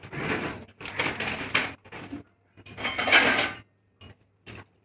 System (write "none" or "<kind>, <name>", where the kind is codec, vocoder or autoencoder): none